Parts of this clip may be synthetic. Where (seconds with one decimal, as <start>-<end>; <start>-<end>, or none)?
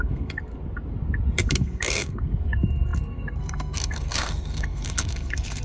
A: 0.0-0.5; 1.5-5.6